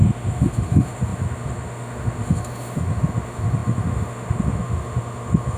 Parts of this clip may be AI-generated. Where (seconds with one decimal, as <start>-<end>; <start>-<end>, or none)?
0.0-5.6